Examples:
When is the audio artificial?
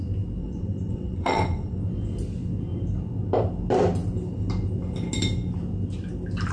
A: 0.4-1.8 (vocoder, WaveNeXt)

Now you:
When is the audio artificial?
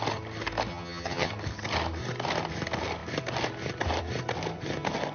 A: 0.7-1.3 (vocoder, HiFi-GAN)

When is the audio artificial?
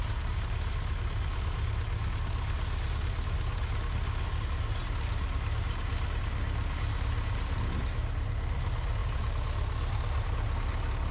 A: none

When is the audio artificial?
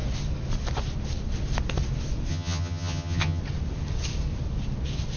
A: 2.3-3.4 (vocoder, HiFi-GAN)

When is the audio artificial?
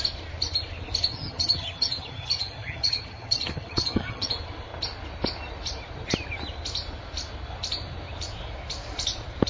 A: 1.1-4.3 (vocoder, HiFi-GAN)